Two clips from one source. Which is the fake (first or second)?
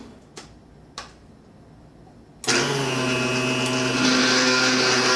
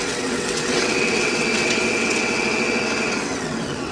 second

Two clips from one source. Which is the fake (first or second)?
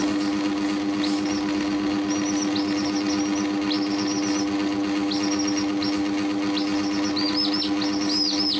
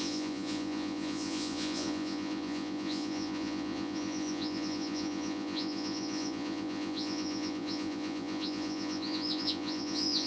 second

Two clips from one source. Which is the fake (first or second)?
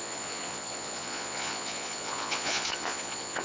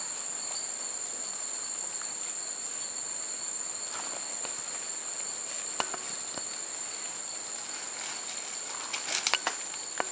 first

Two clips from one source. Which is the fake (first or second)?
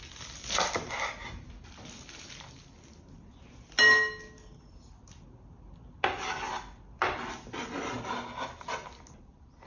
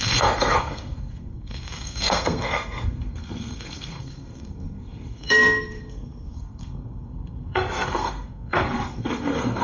second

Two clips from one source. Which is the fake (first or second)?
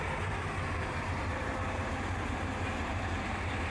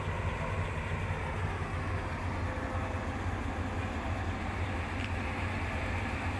first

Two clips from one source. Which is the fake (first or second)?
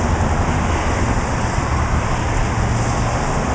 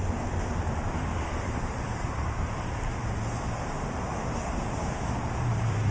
second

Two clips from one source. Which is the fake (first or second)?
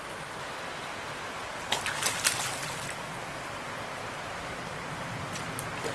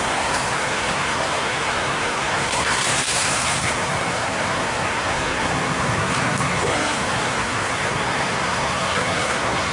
second